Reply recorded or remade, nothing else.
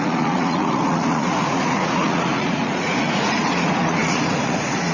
remade